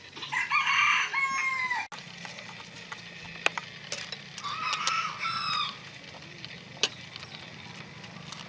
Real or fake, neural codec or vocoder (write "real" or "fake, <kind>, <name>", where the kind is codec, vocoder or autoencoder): real